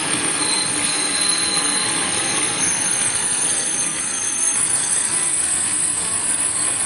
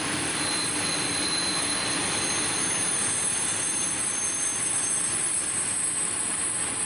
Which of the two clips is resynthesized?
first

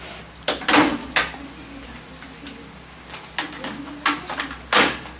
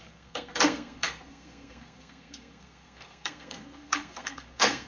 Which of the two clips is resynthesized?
second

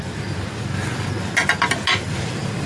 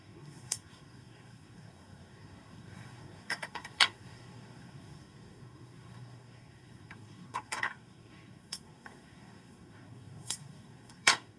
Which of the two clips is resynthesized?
second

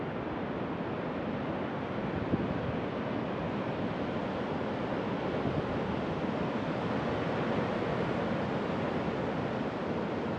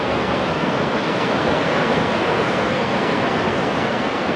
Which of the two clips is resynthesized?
second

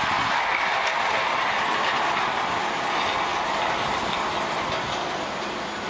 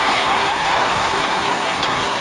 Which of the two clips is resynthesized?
second